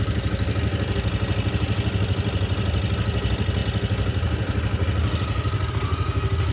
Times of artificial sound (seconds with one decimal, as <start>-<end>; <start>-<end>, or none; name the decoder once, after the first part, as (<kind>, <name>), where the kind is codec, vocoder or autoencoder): none